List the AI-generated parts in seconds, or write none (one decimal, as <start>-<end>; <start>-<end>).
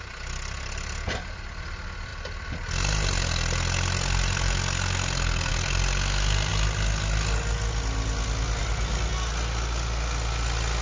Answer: none